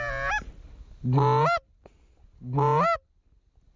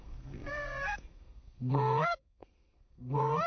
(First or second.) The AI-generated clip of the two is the second